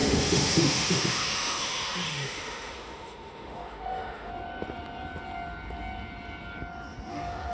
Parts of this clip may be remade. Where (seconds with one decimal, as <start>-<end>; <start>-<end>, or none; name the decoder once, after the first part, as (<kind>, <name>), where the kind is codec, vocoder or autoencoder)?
0.0-4.3 (autoencoder, DAC-VAE); 7.1-7.5